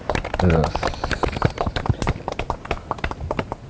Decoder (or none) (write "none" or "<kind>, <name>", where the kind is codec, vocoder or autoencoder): none